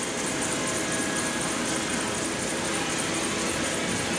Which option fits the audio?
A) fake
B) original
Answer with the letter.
B